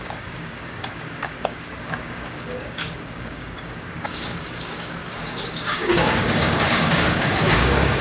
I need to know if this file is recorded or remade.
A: remade